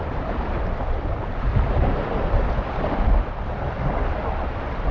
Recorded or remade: recorded